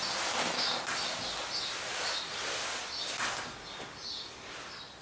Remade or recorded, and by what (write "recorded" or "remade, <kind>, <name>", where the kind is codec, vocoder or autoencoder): recorded